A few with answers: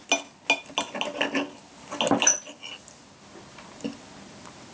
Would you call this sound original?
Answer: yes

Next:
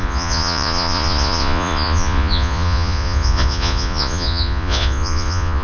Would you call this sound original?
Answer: no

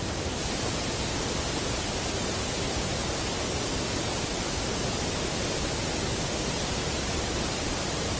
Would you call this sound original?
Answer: yes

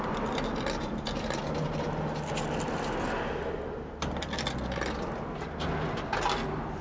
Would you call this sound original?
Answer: yes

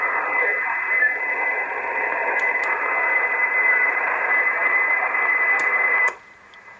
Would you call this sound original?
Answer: no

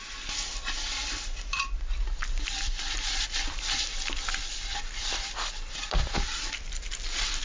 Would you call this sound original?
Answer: no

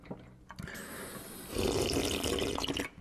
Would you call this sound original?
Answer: yes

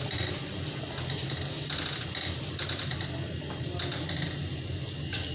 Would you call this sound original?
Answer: yes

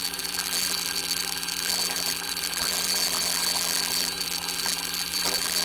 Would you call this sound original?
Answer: no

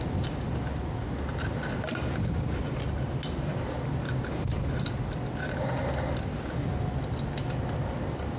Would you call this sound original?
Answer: yes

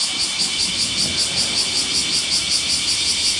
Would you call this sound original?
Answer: yes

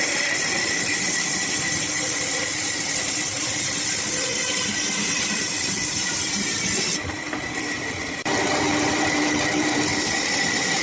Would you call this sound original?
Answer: yes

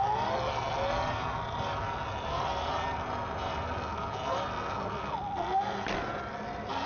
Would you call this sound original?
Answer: yes